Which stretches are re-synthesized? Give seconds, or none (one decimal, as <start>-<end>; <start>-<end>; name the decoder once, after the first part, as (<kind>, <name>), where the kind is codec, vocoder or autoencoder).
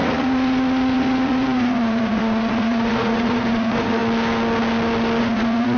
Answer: 0.0-4.0 (vocoder, Vocos); 5.2-5.8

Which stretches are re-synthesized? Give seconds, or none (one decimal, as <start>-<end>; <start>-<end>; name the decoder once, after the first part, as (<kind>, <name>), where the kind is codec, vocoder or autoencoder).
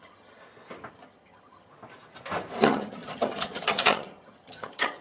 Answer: 0.0-0.4 (vocoder, HiFi-GAN); 0.9-1.7; 2.6-5.0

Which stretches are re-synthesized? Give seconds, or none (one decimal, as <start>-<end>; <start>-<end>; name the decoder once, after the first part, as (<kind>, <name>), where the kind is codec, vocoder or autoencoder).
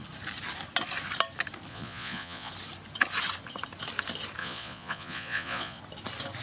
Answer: 1.7-2.5 (vocoder, Vocos); 4.4-5.8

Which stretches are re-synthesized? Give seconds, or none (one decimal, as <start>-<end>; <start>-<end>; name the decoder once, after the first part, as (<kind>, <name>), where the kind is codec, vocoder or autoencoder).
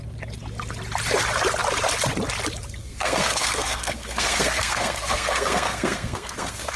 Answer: 2.8-6.8 (codec, SNAC)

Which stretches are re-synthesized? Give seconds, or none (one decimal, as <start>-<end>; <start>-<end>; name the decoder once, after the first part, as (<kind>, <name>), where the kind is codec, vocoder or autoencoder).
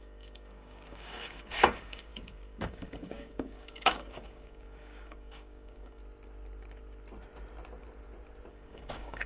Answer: 0.0-6.0 (codec, DAC); 8.5-9.3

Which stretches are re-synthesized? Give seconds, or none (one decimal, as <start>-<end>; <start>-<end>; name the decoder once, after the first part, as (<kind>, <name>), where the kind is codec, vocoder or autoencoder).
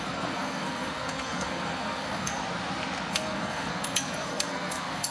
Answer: 0.0-2.4 (codec, SNAC); 3.1-5.1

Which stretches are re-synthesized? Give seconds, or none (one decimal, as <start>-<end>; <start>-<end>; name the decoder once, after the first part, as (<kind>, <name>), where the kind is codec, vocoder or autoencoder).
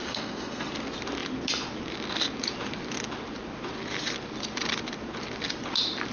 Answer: 0.0-0.7 (codec, SNAC)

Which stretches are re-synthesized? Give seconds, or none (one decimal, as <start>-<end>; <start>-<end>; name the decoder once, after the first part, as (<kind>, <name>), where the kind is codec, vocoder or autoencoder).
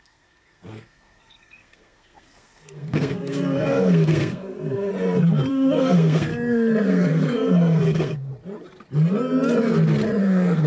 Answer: 0.0-4.9 (codec, SNAC); 5.5-6.3; 6.9-8.3; 10.2-10.7